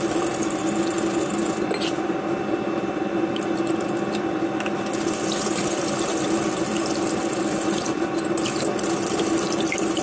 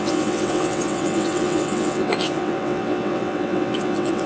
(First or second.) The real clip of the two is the first